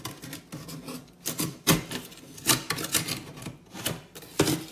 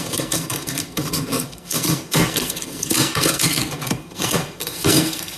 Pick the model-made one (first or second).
second